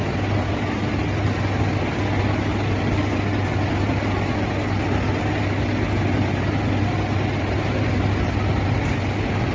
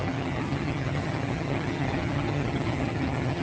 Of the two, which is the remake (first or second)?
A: second